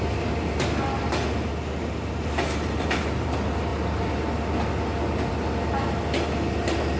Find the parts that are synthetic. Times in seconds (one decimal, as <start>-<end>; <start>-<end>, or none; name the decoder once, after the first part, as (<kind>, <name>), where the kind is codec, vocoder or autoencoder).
none